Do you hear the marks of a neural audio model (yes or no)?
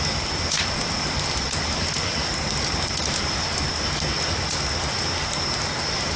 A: no